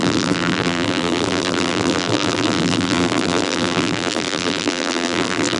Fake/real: fake